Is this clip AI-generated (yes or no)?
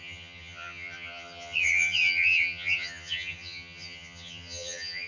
yes